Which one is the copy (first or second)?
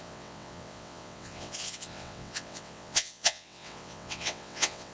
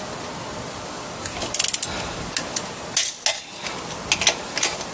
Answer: first